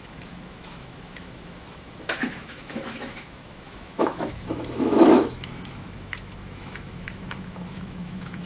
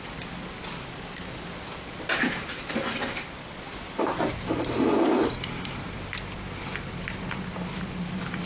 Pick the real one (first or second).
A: second